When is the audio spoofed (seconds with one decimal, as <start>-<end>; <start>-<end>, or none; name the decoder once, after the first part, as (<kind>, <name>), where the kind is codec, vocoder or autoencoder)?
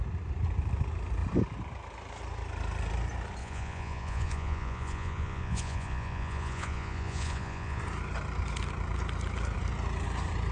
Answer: 3.4-7.8 (vocoder, Vocos)